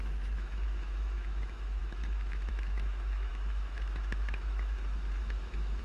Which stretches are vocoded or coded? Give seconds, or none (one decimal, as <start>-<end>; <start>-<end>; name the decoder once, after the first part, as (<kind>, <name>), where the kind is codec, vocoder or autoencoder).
0.0-5.8 (autoencoder, DAC-VAE)